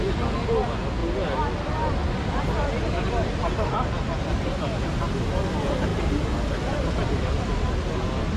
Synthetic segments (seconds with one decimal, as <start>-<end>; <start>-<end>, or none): none

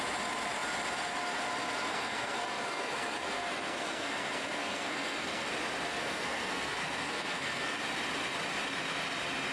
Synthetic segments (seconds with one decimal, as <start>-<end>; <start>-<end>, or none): 1.9-5.5; 6.0-7.8

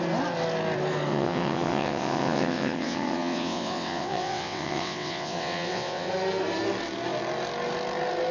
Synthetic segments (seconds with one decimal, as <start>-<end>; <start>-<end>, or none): 1.1-6.1

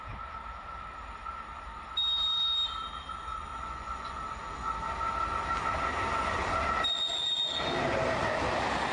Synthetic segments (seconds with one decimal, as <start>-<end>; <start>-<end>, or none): 3.5-4.2

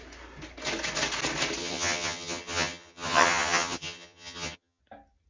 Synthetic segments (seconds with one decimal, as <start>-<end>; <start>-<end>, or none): 1.6-4.8

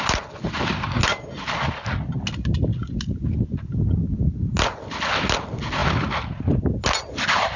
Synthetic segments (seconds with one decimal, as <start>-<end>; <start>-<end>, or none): none